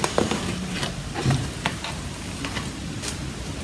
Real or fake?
real